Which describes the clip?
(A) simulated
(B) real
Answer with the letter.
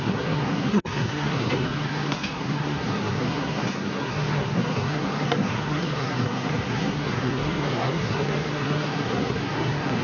A